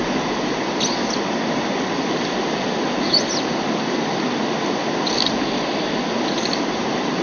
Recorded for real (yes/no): yes